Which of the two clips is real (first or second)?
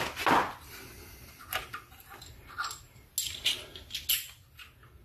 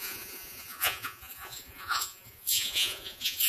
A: first